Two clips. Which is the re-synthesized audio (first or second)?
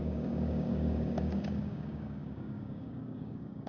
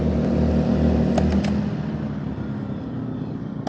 first